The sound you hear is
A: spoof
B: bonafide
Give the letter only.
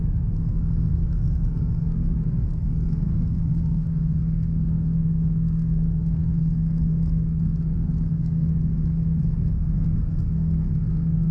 A